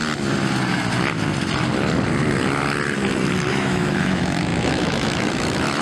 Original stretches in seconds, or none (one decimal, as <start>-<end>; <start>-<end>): 0.0-3.5